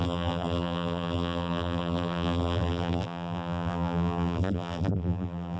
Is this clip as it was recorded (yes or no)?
no